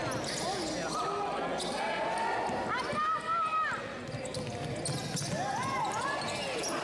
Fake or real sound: real